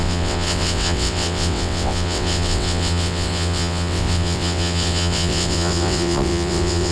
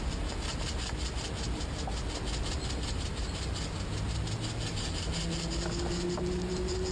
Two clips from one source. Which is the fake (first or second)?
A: first